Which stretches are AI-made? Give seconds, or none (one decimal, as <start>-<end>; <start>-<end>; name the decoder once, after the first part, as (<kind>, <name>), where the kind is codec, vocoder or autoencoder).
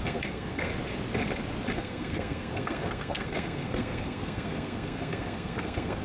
0.0-0.7 (codec, SNAC); 1.7-6.0